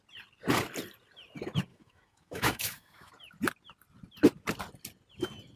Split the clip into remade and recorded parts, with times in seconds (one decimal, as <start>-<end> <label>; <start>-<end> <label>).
0.0-1.7 recorded; 1.7-3.1 remade; 3.1-5.6 recorded